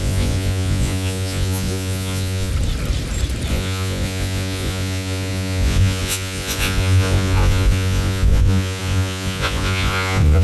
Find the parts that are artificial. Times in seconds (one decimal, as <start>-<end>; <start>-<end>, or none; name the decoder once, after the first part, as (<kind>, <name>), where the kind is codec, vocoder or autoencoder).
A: 0.0-2.5 (vocoder, Vocos); 3.5-10.4